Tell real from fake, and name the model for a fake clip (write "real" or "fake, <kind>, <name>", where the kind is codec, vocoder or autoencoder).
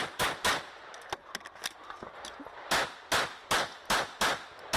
real